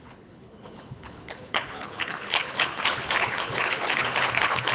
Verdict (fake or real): fake